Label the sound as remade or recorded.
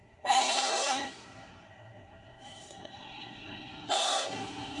remade